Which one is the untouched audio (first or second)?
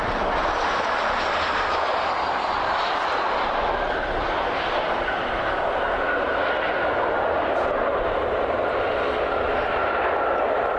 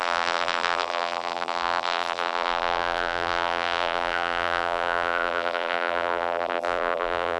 first